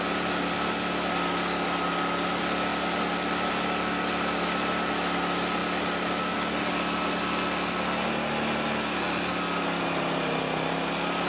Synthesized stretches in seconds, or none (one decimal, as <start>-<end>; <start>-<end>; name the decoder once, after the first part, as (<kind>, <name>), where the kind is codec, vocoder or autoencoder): none